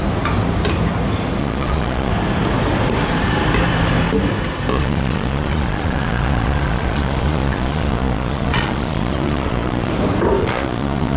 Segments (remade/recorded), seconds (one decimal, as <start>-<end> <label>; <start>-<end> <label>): 0.0-1.4 recorded; 1.4-2.1 remade; 2.1-4.7 recorded; 4.7-9.9 remade; 9.9-10.4 recorded; 10.4-11.2 remade